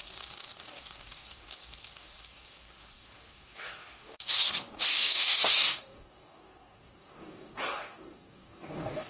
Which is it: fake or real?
fake